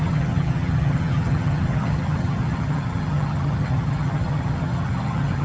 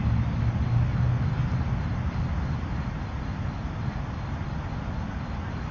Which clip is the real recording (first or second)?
second